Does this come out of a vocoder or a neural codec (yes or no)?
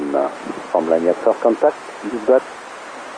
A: no